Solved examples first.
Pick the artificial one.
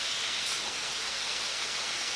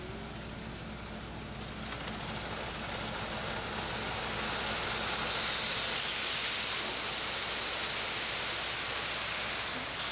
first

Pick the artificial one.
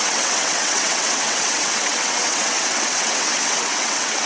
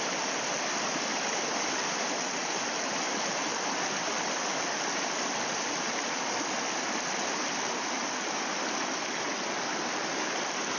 first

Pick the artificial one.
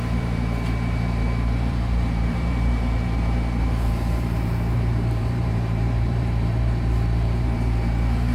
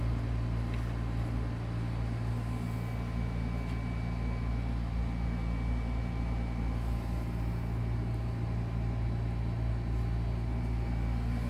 first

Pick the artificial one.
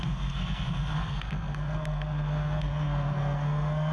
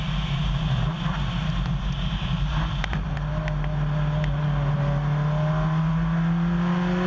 first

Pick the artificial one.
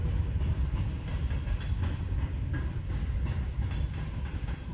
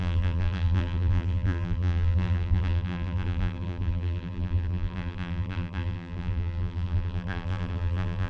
second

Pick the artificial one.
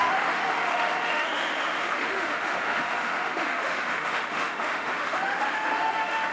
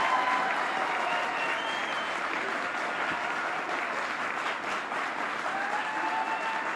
first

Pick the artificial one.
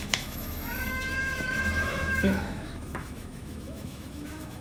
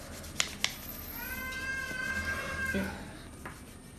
first